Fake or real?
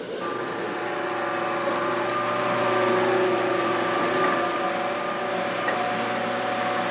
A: real